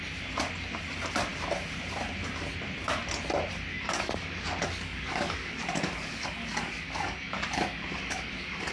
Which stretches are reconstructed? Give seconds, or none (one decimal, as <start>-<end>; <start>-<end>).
3.7-8.7